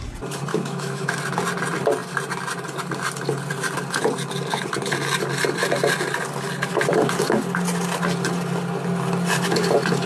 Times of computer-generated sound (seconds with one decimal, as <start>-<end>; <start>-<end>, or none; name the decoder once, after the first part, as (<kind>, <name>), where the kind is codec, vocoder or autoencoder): 0.5-1.2 (autoencoder, DAC-VAE)